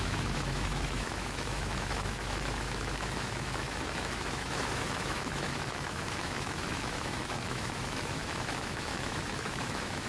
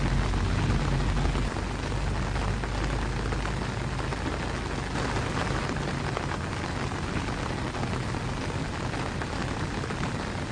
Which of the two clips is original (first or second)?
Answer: second